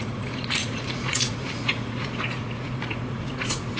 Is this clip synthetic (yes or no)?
yes